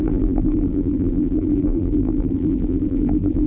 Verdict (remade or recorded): remade